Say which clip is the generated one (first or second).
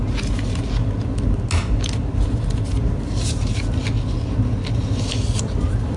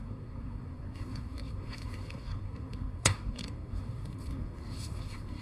second